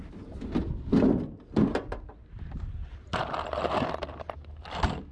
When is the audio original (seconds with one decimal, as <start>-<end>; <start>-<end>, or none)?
0.0-2.1; 2.6-5.1